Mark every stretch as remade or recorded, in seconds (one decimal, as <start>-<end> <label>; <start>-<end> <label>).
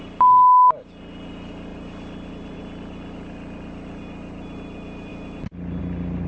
0.0-6.3 recorded